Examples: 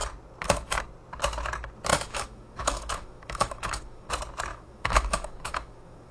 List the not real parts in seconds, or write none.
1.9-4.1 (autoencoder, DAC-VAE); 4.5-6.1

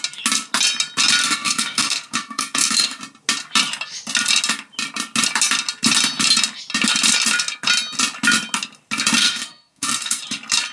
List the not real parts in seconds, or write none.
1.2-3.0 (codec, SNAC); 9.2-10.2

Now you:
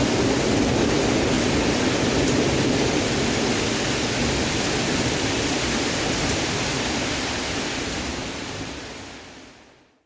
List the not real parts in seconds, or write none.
8.1-8.8 (vocoder, BigVGAN v2)